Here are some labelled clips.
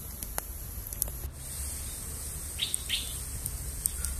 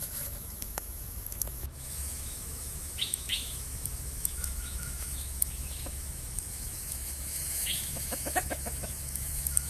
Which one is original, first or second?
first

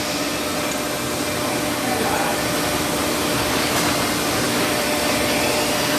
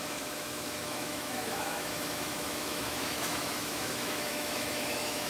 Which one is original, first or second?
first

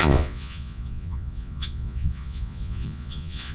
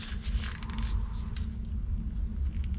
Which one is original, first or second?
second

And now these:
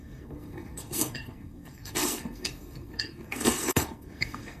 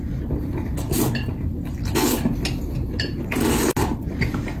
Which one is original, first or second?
second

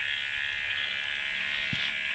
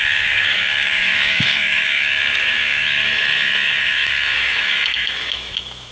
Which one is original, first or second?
first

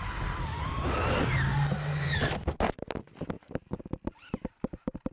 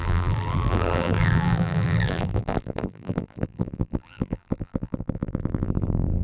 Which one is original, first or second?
first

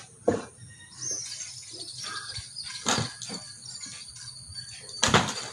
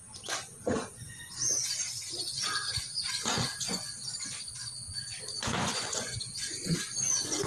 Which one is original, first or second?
first